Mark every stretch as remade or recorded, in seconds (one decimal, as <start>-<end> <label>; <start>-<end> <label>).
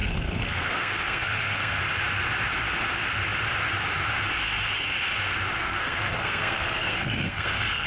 0.0-1.8 remade; 1.8-5.6 recorded; 5.6-7.9 remade